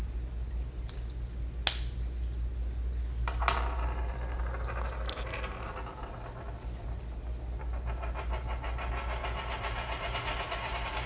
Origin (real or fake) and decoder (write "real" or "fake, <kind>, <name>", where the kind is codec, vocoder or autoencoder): real